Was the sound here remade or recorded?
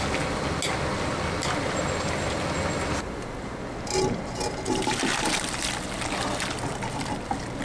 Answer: recorded